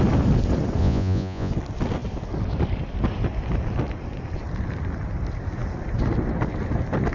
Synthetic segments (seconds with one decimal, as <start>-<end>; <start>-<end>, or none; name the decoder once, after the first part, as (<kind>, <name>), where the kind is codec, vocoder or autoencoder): 0.8-1.5 (vocoder, Vocos)